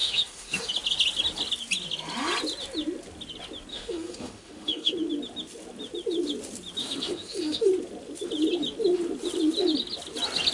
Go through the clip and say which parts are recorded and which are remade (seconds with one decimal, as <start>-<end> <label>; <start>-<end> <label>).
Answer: 0.0-0.7 remade; 0.7-3.7 recorded; 3.7-4.9 remade; 4.9-6.8 recorded; 6.8-7.7 remade; 7.7-10.5 recorded